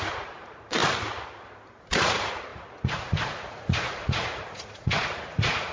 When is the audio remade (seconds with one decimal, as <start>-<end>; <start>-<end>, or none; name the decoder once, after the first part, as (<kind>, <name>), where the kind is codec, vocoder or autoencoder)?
0.0-0.8 (vocoder, Vocos); 1.8-5.7